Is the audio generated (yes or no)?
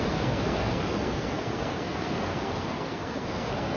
yes